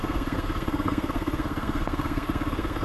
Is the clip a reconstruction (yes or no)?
yes